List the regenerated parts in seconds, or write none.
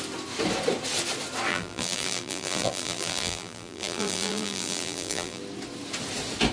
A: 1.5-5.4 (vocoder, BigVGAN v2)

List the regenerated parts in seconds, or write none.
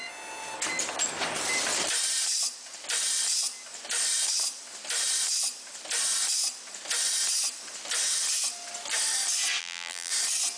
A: 9.6-10.1 (vocoder, BigVGAN v2)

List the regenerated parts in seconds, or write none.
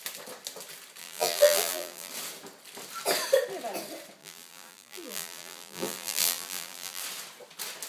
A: 1.0-2.1 (vocoder, BigVGAN v2); 4.2-7.0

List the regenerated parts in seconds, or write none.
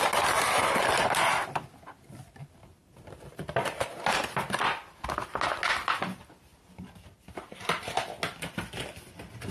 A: none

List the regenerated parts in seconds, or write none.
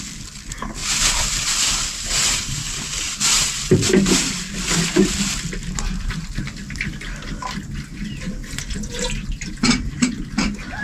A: 0.8-4.5 (vocoder, BigVGAN v2); 8.4-10.3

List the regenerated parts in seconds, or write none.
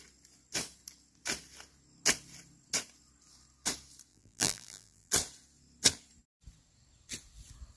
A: 4.1-5.1 (vocoder, BigVGAN v2)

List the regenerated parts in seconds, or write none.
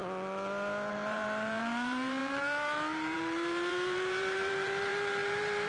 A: 0.9-5.7 (vocoder, BigVGAN v2)